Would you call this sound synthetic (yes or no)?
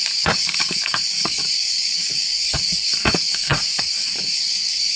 yes